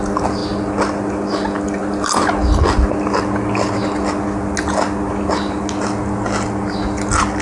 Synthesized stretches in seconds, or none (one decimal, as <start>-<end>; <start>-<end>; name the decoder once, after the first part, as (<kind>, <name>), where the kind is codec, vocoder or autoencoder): none